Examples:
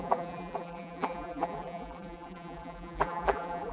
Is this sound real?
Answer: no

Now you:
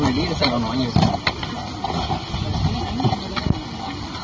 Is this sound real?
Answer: yes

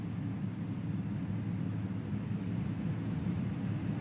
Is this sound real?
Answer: yes